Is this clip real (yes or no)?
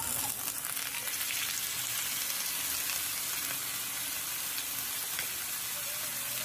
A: yes